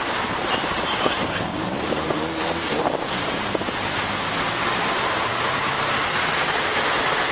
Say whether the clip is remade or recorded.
remade